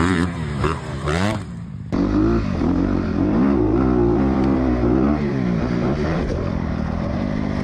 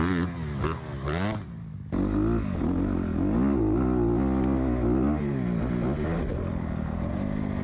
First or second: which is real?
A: second